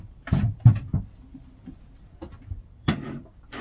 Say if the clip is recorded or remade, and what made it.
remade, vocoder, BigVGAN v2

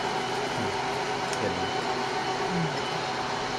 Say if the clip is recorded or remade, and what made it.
recorded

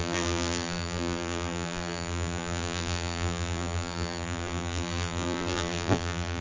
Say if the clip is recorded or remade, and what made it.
remade, vocoder, BigVGAN v2